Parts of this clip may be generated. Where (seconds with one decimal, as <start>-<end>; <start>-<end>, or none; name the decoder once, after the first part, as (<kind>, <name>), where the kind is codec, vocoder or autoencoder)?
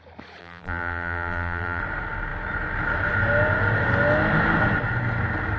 0.4-1.8 (vocoder, BigVGAN v2)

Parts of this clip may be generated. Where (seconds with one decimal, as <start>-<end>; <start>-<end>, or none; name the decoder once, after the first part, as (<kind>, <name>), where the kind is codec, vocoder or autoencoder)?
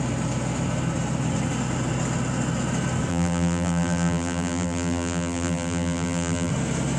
3.1-6.5 (vocoder, BigVGAN v2)